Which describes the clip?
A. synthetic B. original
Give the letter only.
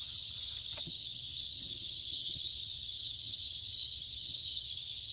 A